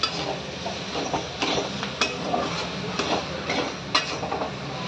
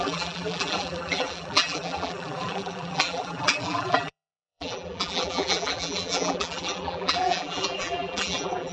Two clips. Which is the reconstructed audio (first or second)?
second